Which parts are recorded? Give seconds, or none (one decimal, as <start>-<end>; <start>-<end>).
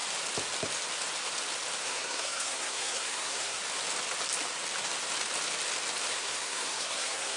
0.0-1.8; 3.6-6.1